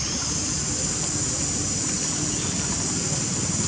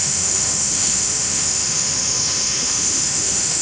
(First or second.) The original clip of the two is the first